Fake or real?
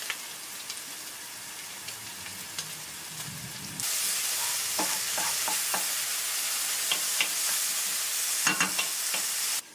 real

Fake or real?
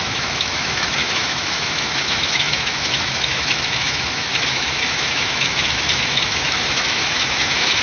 fake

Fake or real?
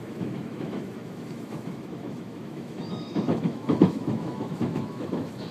fake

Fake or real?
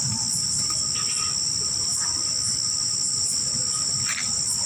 real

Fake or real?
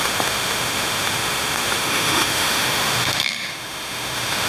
fake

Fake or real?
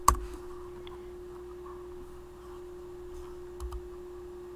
real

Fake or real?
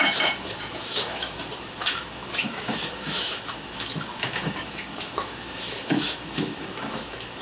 fake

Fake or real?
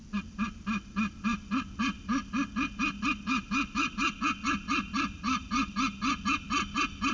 real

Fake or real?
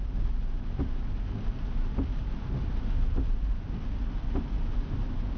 real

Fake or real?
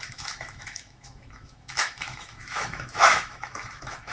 fake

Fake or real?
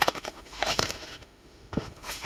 fake